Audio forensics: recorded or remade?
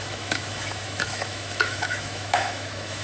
remade